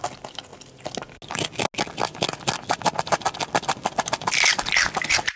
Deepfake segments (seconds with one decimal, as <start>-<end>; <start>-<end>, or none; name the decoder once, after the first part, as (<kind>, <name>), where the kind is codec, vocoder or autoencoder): 0.0-0.5 (vocoder, BigVGAN v2); 3.0-5.4